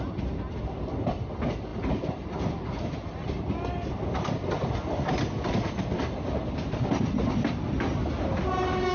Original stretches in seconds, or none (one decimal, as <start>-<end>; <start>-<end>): 0.0-8.9